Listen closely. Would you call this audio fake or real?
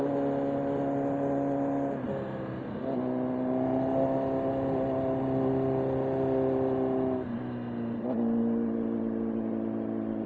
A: real